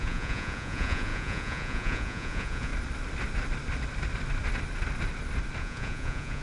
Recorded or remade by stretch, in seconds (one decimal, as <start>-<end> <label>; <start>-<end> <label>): 0.0-2.7 remade; 2.7-5.6 recorded; 5.6-6.4 remade